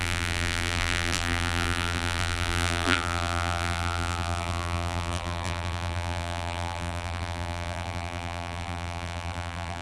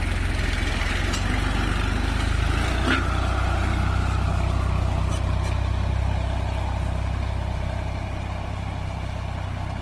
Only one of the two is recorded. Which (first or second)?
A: second